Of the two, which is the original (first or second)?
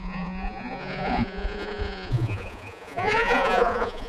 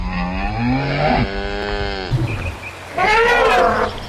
second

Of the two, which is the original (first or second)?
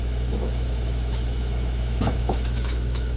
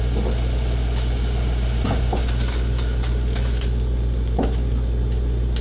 second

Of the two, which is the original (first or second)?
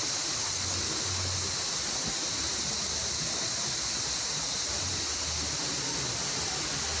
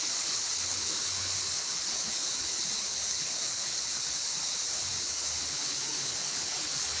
first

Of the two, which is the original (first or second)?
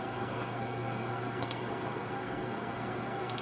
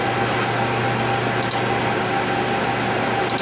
second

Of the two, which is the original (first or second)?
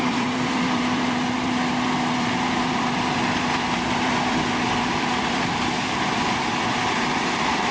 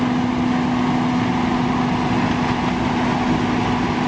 second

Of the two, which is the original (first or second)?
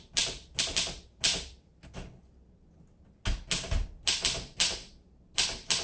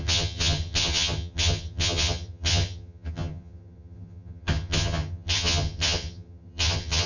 first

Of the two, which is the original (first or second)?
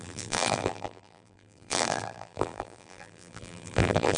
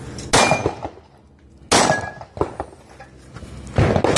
second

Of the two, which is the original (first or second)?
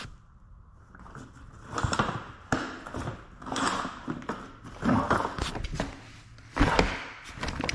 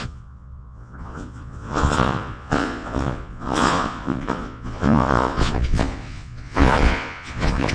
first